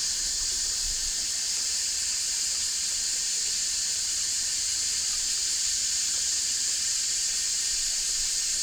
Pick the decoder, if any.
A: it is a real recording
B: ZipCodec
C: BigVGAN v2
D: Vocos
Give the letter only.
C